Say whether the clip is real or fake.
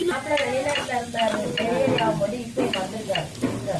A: real